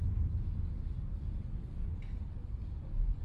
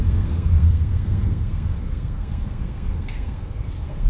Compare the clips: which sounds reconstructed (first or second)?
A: second